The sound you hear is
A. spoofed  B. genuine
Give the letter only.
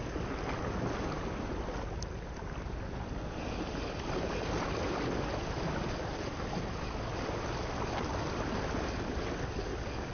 B